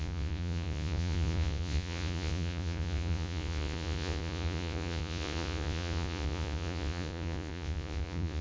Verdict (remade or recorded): remade